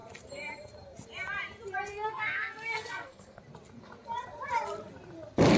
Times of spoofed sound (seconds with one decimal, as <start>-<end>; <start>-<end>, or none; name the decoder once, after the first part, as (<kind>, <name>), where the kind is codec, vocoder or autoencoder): 1.9-3.4 (codec, SNAC)